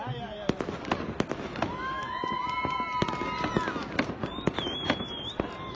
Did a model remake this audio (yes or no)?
no